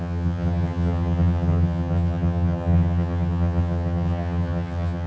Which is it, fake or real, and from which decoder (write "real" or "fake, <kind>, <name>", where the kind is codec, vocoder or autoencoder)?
fake, vocoder, HiFi-GAN